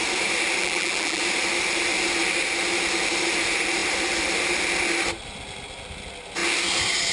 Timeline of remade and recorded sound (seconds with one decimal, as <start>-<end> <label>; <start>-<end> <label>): 0.0-0.6 recorded; 0.6-1.2 remade; 1.2-7.1 recorded